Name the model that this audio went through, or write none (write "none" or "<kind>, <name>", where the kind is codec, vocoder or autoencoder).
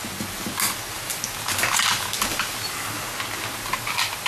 none